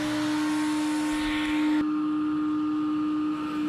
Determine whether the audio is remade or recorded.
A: recorded